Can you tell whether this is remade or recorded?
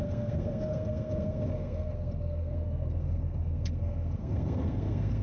remade